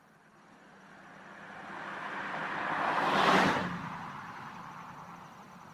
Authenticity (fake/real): real